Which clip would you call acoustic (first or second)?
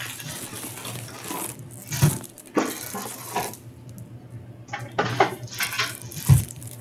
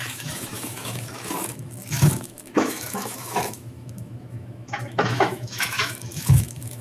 first